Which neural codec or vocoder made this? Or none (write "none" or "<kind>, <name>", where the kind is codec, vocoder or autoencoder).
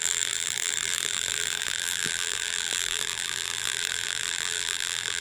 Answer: vocoder, BigVGAN v2